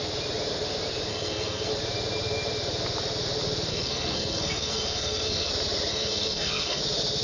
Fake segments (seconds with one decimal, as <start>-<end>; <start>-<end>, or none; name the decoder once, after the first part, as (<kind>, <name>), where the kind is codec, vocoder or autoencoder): 1.1-1.7 (codec, SNAC); 3.7-5.5; 5.9-6.8